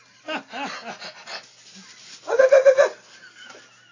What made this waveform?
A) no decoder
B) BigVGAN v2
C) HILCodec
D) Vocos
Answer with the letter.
A